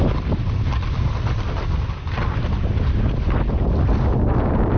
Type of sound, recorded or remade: recorded